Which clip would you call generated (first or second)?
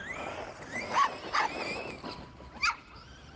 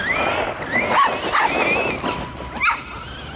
first